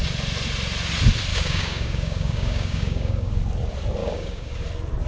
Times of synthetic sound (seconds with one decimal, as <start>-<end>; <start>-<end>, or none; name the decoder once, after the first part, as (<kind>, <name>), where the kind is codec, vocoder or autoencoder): 1.3-3.3 (codec, DAC); 4.0-4.6

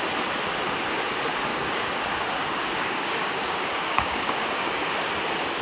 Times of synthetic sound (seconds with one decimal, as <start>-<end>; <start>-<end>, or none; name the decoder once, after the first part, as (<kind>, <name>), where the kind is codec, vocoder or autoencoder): 1.5-4.9 (codec, DAC)